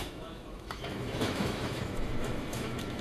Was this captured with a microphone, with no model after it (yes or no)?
no